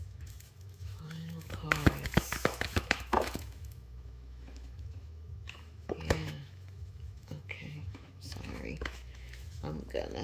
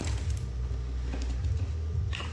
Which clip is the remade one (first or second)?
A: first